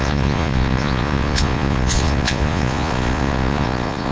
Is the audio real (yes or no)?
no